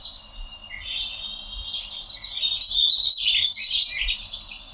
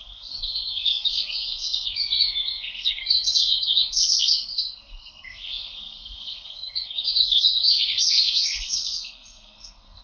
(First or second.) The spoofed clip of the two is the second